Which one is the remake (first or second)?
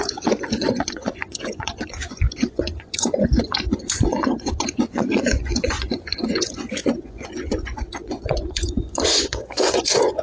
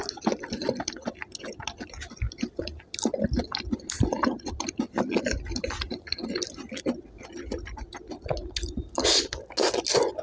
first